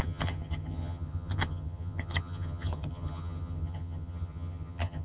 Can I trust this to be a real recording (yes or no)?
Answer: no